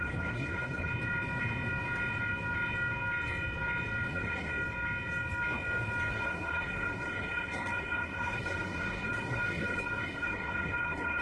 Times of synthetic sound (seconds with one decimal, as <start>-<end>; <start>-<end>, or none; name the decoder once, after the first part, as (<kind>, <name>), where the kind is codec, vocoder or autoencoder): 0.0-0.9 (codec, SNAC); 4.1-4.5; 6.1-11.2

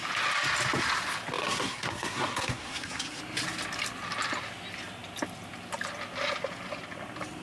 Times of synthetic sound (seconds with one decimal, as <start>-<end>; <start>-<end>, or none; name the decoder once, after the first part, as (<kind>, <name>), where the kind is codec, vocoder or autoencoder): 1.4-3.2 (codec, SNAC)